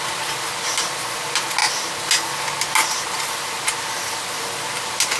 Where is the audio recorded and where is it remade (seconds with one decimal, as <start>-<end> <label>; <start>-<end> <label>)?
0.0-5.2 recorded